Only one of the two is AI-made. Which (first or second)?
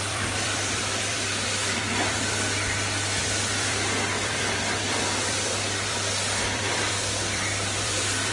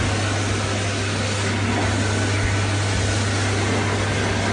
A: first